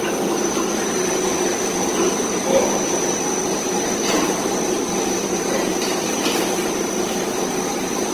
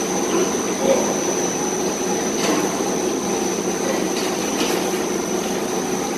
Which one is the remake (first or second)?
first